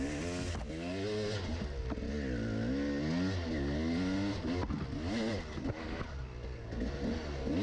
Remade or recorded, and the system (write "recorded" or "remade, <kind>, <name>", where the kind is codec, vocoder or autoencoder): recorded